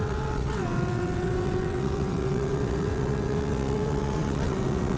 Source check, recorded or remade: remade